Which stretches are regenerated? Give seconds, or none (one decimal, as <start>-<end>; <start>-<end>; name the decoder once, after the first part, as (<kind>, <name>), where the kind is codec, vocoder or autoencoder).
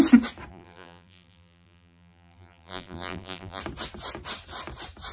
0.5-3.6 (vocoder, BigVGAN v2)